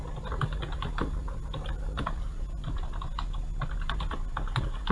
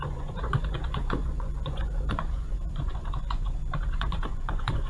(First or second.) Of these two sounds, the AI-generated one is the second